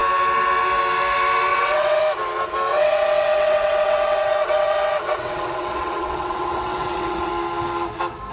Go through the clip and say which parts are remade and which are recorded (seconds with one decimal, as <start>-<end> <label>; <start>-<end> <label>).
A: 0.0-1.5 recorded; 1.5-2.0 remade; 2.0-2.7 recorded; 2.7-7.3 remade; 7.3-8.3 recorded